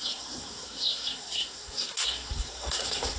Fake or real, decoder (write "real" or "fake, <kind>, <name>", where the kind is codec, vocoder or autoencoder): fake, codec, SNAC